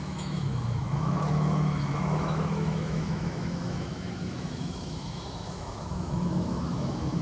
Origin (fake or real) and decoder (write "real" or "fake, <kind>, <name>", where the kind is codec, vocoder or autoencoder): fake, autoencoder, DAC-VAE